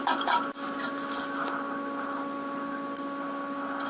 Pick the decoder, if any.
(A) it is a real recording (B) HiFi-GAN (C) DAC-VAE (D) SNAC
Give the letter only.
A